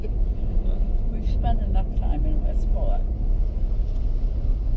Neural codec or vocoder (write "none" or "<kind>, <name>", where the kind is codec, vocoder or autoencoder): none